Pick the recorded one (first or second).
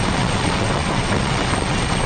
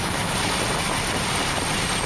second